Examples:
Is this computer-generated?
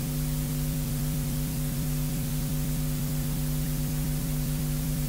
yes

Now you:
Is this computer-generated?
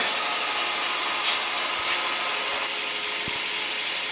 no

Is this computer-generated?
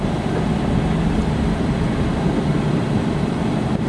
no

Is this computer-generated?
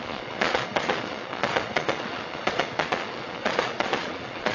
yes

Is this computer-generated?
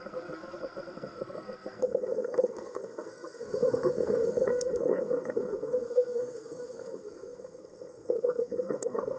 yes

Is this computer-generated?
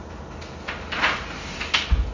no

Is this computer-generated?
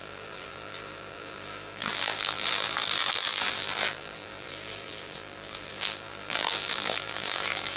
yes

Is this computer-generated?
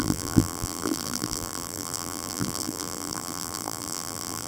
yes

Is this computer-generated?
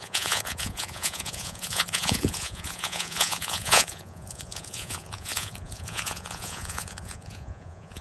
yes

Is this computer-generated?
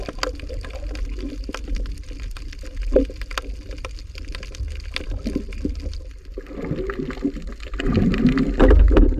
no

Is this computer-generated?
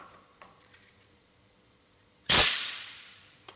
yes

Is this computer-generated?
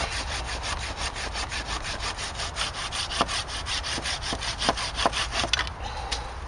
no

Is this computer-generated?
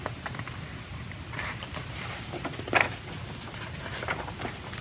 no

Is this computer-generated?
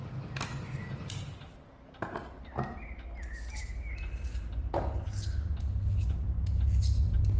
no